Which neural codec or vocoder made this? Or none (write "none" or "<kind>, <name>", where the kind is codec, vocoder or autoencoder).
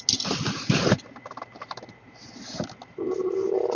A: none